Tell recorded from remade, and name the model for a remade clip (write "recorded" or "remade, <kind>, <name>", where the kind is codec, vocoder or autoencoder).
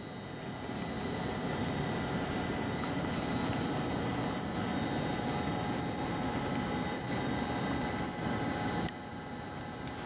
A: recorded